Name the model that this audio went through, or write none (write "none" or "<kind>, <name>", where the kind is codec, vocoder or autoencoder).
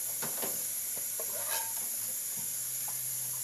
none